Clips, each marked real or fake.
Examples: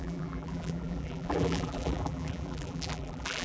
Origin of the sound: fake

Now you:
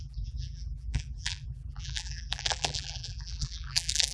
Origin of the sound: fake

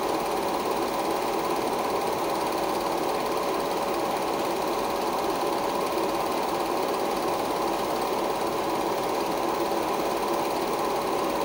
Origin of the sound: fake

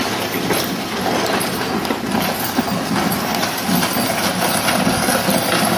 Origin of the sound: real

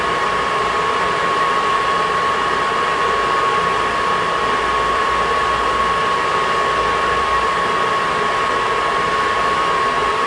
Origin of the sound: fake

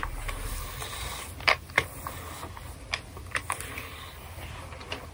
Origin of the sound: real